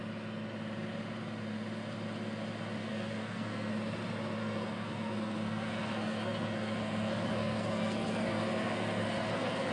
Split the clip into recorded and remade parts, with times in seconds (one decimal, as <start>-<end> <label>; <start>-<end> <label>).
0.0-2.8 recorded; 2.8-3.7 remade; 3.7-4.4 recorded; 4.4-9.7 remade